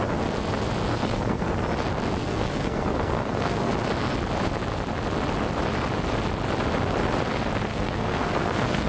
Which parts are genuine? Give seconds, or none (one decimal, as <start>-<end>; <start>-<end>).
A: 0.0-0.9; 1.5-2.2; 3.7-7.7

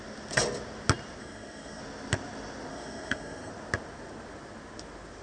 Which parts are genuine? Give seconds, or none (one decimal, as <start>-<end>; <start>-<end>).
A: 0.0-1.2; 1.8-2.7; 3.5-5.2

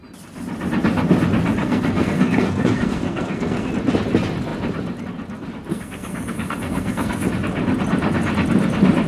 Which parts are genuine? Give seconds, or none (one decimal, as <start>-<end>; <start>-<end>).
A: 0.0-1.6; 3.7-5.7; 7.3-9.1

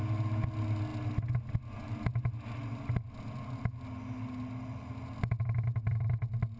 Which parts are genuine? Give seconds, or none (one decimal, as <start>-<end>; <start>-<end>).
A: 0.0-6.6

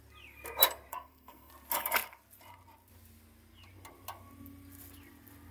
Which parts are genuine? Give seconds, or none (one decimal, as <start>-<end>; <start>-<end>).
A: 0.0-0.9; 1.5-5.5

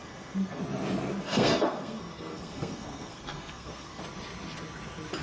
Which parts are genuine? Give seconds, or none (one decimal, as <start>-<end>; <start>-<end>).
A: 0.6-1.2; 4.0-5.2